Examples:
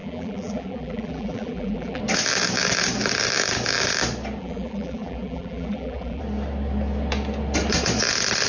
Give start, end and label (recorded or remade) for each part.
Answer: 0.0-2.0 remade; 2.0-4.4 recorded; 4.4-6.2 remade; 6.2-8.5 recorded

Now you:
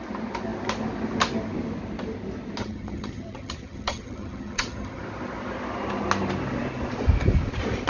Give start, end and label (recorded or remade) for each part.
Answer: 0.0-2.6 recorded; 2.6-5.0 remade; 5.0-7.9 recorded

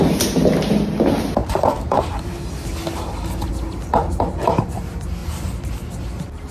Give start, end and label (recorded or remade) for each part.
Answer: 0.0-6.5 recorded

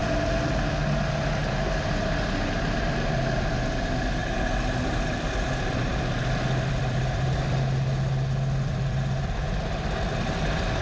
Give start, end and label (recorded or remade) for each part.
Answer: 0.0-4.2 recorded; 4.2-7.4 remade; 7.4-10.8 recorded

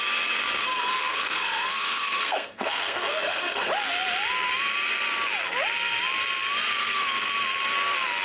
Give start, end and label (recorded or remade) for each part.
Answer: 0.0-0.6 recorded; 0.6-3.7 remade; 3.7-6.8 recorded; 6.8-7.3 remade; 7.3-8.2 recorded

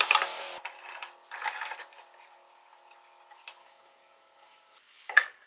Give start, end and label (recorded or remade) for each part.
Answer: 0.0-3.6 recorded; 3.6-5.5 remade